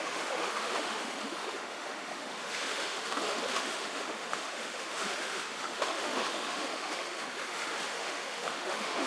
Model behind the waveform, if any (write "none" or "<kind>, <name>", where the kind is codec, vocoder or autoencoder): autoencoder, DAC-VAE